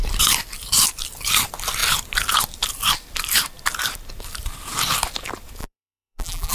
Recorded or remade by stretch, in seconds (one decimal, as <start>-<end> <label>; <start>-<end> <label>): 0.0-5.6 recorded; 5.6-6.5 remade